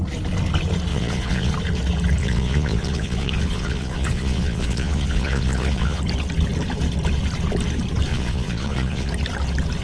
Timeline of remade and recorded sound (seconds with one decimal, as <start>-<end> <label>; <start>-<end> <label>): 0.0-0.9 recorded; 0.9-1.5 remade; 1.5-2.2 recorded; 2.2-6.0 remade; 6.0-8.1 recorded; 8.1-9.1 remade; 9.1-9.8 recorded